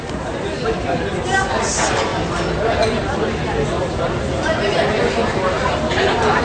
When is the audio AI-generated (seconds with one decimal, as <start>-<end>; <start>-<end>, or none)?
none